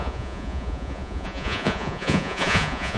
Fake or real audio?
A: fake